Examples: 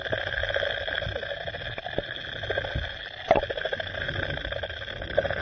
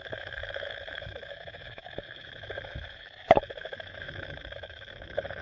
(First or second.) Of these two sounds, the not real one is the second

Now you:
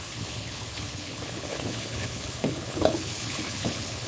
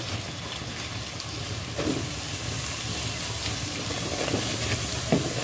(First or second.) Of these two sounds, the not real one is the first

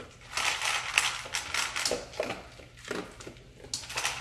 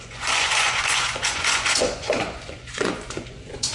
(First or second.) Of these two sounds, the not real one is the second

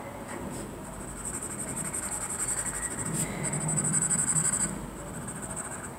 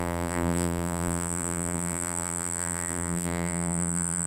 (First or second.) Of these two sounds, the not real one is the second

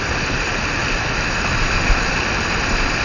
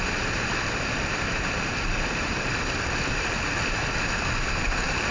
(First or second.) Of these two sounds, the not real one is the second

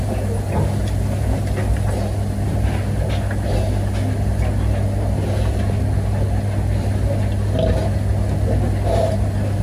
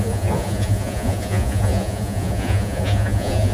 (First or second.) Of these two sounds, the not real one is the second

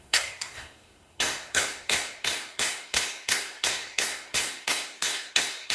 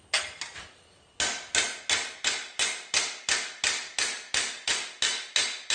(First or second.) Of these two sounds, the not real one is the first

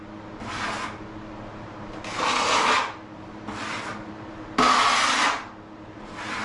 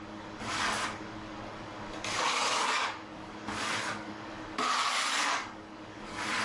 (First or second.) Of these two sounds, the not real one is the second